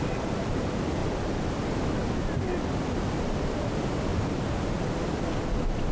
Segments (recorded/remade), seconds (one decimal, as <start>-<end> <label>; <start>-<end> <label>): 0.0-2.0 remade; 2.0-2.8 recorded; 2.8-4.1 remade; 4.1-5.9 recorded